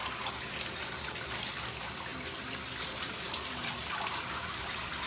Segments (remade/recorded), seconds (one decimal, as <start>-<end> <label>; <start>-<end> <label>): 0.0-2.1 recorded; 2.1-4.5 remade; 4.5-5.1 recorded